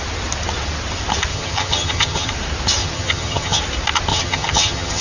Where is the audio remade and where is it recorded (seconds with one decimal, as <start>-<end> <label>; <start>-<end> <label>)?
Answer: 0.0-1.3 recorded; 1.3-2.3 remade; 2.3-2.8 recorded; 2.8-3.6 remade; 3.6-4.1 recorded; 4.1-5.0 remade